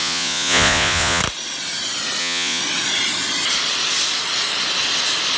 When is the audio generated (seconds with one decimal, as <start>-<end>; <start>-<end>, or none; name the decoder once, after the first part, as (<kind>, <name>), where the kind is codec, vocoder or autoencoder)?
0.0-1.2 (vocoder, Vocos); 2.2-2.6